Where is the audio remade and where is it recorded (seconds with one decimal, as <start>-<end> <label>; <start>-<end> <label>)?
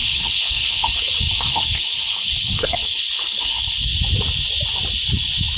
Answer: 0.0-3.9 remade; 3.9-5.6 recorded